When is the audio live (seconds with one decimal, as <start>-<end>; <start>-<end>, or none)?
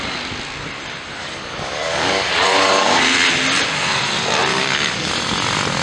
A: 0.0-1.2; 3.0-4.5; 5.1-5.8